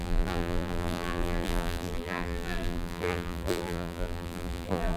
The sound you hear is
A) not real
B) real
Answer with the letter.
A